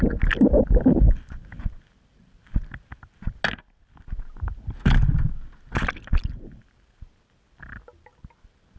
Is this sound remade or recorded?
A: recorded